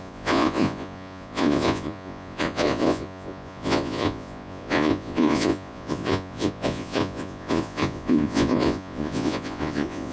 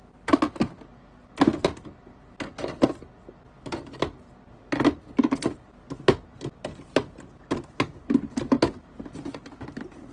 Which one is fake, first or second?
first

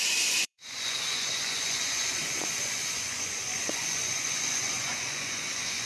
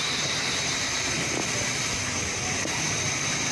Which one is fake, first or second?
first